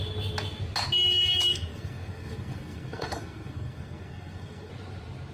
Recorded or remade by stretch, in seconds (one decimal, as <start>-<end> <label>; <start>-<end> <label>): 0.0-1.5 recorded; 1.5-4.7 remade; 4.7-5.3 recorded